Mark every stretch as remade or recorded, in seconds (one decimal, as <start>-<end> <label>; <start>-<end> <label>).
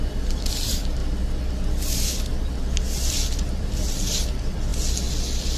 0.0-1.0 remade; 1.0-1.7 recorded; 1.7-4.7 remade; 4.7-5.6 recorded